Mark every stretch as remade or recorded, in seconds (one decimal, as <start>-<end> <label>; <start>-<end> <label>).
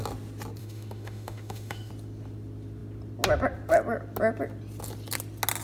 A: 0.0-0.6 recorded; 0.6-1.9 remade; 1.9-5.6 recorded